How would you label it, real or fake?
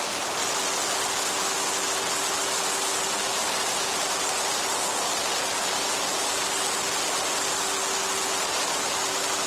real